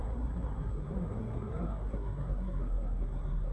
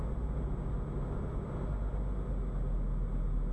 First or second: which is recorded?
second